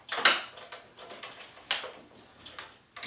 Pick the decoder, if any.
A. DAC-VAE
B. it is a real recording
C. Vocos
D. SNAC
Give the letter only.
B